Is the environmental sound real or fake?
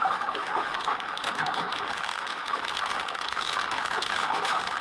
fake